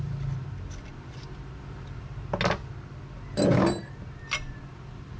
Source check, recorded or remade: recorded